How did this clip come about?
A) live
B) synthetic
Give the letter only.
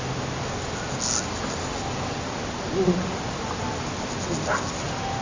A